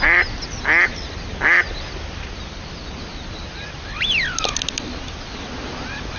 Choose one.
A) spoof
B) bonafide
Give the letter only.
B